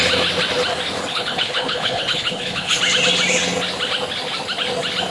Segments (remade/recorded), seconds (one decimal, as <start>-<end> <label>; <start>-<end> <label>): 0.0-1.1 recorded; 1.1-2.8 remade; 2.8-5.1 recorded